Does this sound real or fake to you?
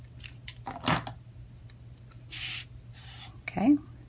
real